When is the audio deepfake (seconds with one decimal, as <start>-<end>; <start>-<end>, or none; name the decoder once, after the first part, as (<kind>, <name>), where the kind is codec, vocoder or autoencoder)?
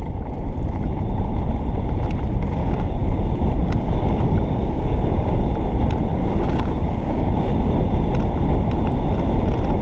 2.6-3.2 (codec, DAC); 3.6-5.5; 6.1-7.3